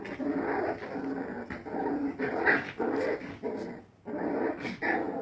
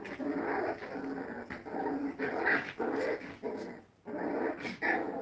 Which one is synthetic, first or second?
first